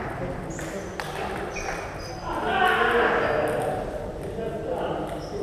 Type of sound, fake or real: real